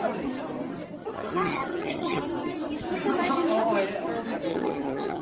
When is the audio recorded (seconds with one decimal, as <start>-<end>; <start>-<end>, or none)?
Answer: 0.0-1.0; 2.2-4.5